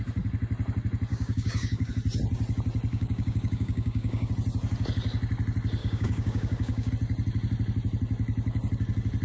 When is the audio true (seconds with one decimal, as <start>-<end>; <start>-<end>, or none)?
0.0-1.1; 1.9-2.9; 4.3-5.8; 6.9-9.2